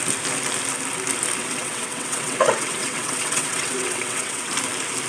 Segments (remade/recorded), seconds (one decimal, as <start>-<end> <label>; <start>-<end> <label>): 0.0-1.4 recorded; 1.4-4.5 remade; 4.5-5.1 recorded